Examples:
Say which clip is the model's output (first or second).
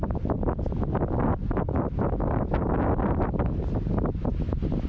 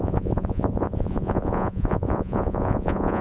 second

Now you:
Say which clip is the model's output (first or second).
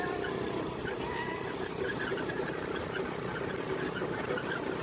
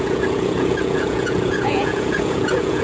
second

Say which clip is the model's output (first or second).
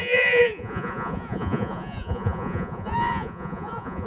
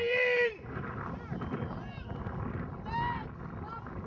first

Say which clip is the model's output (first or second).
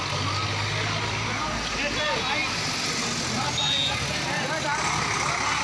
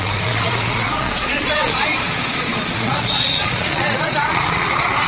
second